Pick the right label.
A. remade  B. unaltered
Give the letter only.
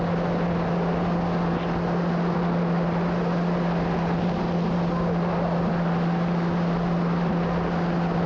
B